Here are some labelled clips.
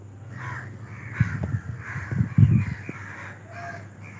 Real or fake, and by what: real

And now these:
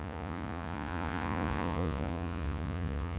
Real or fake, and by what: fake, vocoder, Vocos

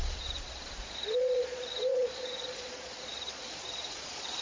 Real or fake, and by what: fake, vocoder, Vocos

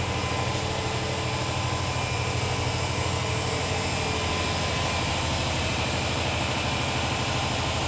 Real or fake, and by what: real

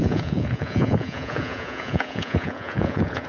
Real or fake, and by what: fake, vocoder, Vocos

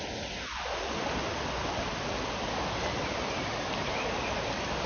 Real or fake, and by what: real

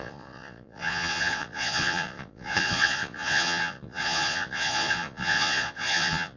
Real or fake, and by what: fake, vocoder, Vocos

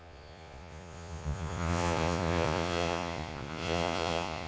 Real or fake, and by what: fake, vocoder, Vocos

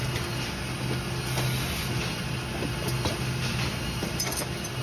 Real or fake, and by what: real